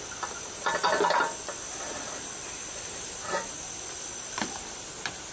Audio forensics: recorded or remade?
recorded